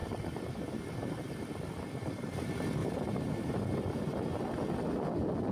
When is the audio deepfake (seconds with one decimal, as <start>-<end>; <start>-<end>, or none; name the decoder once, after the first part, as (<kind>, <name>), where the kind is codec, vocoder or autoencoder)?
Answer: 0.0-1.3 (vocoder, BigVGAN v2); 2.8-4.2